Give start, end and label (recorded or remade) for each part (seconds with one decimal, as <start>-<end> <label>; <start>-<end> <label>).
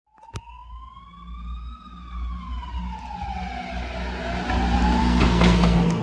0.0-5.0 recorded; 5.0-6.0 remade